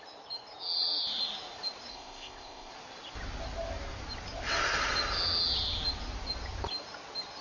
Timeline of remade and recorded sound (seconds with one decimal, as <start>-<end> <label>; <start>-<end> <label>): 0.0-1.9 recorded; 1.9-2.7 remade; 2.7-7.4 recorded